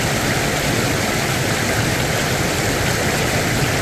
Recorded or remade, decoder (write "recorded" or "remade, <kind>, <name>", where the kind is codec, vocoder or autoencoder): recorded